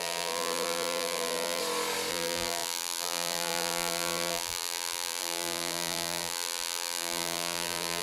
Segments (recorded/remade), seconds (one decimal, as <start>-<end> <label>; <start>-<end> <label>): 0.0-1.6 remade; 1.6-2.1 recorded; 2.1-8.0 remade